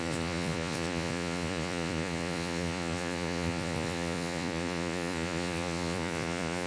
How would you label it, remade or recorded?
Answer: remade